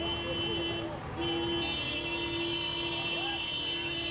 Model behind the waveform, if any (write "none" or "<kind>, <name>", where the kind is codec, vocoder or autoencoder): none